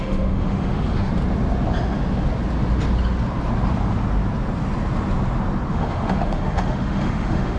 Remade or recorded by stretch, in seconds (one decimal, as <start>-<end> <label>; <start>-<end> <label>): 0.0-1.1 remade; 1.1-5.7 recorded; 5.7-7.6 remade